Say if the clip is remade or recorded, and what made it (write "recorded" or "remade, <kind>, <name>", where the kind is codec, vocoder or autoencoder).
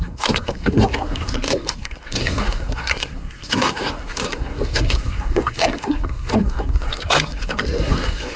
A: remade, codec, SNAC